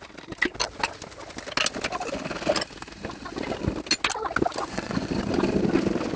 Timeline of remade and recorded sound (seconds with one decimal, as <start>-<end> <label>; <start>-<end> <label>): 0.0-4.6 recorded; 4.6-5.1 remade; 5.1-6.2 recorded